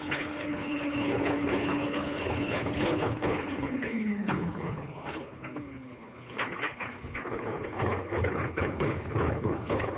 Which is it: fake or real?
fake